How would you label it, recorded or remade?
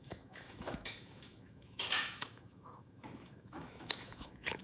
remade